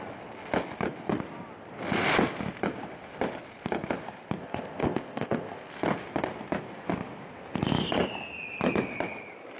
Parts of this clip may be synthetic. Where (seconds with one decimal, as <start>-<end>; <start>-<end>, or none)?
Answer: 4.4-5.7